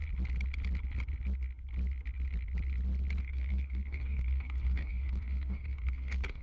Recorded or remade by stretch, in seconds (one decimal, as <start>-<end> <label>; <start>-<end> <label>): 0.0-3.2 recorded; 3.2-6.4 remade